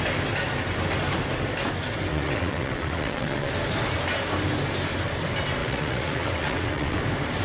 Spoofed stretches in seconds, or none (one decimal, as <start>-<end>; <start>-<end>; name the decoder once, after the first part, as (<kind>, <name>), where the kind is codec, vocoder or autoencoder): 2.1-3.5 (vocoder, WaveNeXt); 5.6-7.0